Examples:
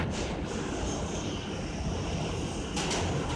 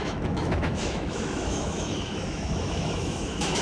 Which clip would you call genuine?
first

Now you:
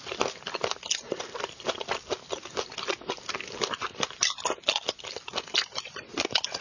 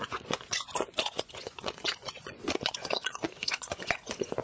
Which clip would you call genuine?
first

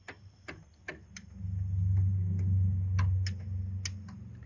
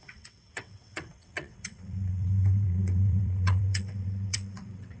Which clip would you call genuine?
first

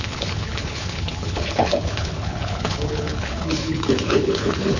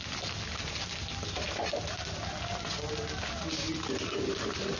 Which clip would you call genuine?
second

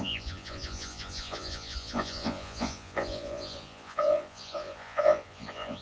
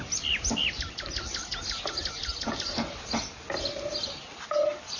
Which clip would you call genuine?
second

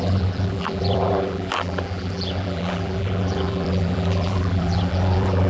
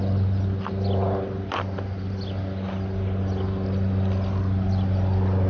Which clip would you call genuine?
second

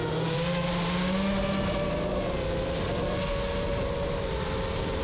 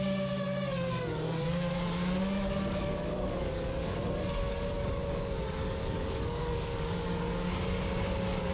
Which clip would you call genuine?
first